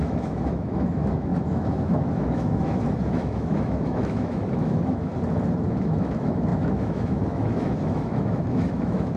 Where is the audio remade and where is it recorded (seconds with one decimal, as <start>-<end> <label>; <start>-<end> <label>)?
0.0-5.1 remade; 5.1-5.8 recorded; 5.8-9.2 remade